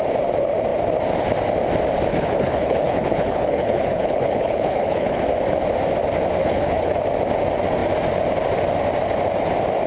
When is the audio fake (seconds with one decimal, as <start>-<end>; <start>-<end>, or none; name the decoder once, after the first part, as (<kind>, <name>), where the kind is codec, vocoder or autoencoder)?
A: 2.1-5.2 (codec, HILCodec); 6.4-6.9